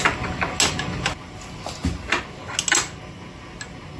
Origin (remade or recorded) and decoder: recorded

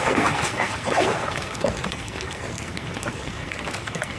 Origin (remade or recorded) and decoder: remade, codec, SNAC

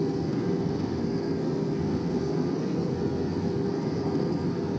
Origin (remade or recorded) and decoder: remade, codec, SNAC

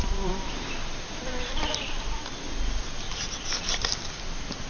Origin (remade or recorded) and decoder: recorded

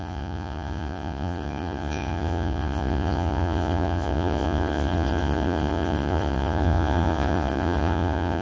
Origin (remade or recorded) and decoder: remade, vocoder, Vocos